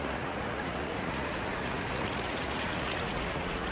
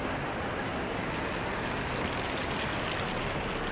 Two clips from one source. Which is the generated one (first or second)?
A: first